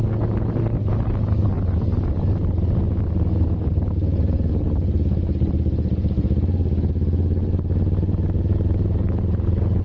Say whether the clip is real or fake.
real